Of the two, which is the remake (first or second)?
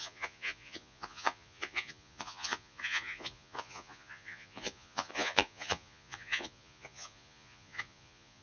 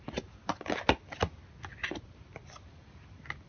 first